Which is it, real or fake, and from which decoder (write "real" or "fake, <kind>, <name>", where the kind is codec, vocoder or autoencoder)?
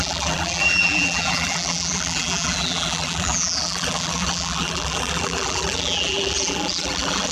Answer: fake, vocoder, BigVGAN v2